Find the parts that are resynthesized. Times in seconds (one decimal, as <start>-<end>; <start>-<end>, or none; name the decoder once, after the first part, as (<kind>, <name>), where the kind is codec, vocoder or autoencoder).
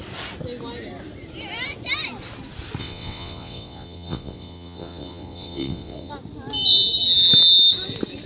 2.8-6.1 (vocoder, WaveNeXt)